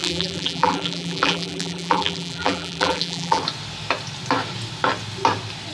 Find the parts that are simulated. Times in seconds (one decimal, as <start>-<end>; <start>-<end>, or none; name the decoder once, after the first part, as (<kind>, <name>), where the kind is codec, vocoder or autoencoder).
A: 0.0-3.4 (vocoder, BigVGAN v2)